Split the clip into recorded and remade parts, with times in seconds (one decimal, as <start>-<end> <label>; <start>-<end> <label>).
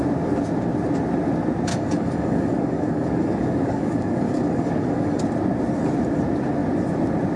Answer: 0.0-1.7 recorded; 1.7-5.2 remade; 5.2-7.4 recorded